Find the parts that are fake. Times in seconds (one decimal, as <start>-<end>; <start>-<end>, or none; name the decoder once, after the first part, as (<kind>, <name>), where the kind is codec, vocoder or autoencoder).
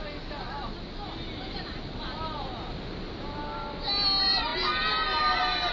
none